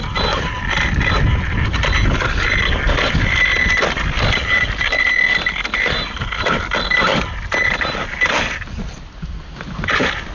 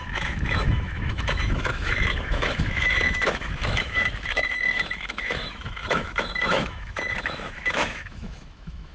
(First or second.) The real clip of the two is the first